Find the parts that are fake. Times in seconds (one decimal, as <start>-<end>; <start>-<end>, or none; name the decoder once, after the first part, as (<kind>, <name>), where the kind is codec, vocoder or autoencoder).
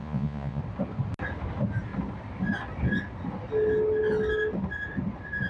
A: 0.0-0.6 (vocoder, Vocos)